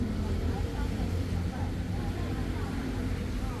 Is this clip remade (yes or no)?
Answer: no